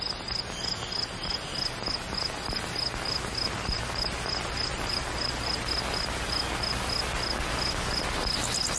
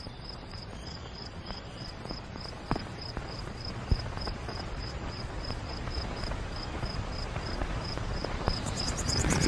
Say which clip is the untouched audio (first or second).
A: first